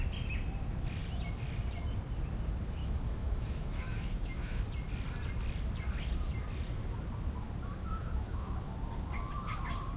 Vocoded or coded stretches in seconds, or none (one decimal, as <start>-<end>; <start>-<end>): 2.8-4.6; 7.9-8.5